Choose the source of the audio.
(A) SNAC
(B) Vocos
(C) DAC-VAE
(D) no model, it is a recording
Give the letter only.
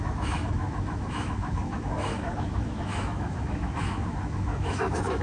C